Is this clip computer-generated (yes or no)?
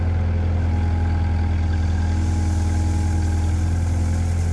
no